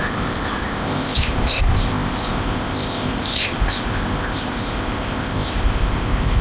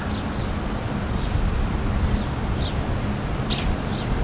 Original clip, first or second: second